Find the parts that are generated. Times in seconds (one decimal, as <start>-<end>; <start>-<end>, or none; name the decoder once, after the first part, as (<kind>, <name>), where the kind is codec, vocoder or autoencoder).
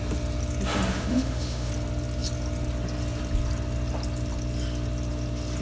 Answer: 0.9-1.7 (autoencoder, DAC-VAE)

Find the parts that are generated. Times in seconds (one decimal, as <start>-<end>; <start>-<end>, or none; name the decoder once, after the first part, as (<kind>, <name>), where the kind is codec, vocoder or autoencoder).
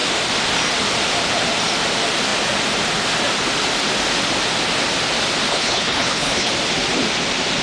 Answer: 5.5-6.5 (codec, HILCodec)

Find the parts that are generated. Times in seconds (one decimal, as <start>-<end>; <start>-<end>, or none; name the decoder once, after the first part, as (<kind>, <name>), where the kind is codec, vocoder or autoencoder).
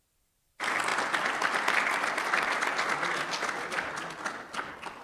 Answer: none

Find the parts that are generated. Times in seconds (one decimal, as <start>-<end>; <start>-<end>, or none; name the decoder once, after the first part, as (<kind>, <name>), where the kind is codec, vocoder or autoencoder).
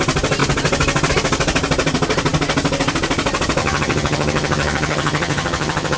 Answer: 3.6-6.0 (vocoder, HiFi-GAN)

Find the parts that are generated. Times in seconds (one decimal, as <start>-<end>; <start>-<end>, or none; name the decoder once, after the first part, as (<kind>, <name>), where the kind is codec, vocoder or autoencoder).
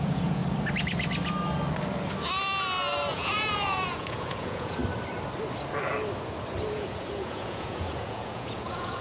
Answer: 0.0-0.4 (vocoder, Vocos); 3.1-4.8; 6.7-9.0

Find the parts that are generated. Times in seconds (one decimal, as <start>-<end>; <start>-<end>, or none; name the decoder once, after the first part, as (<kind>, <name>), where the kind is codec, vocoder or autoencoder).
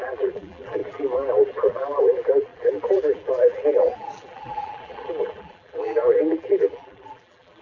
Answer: 0.0-7.6 (vocoder, BigVGAN v2)